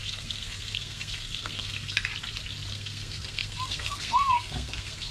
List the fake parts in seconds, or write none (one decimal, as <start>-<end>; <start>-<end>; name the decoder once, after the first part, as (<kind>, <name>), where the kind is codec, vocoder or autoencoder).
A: 0.0-2.1 (codec, SNAC); 2.7-5.1